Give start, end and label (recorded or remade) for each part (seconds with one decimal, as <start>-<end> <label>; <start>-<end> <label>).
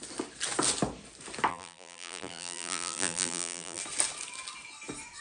0.0-1.5 recorded; 1.5-3.8 remade; 3.8-5.2 recorded